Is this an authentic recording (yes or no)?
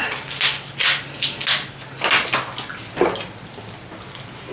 yes